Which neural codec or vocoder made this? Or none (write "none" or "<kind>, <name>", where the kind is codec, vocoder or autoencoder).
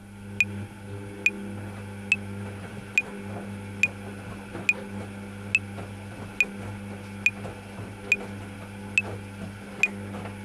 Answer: none